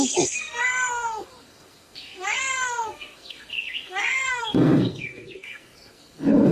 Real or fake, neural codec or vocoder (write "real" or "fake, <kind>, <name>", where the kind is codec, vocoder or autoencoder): fake, codec, SNAC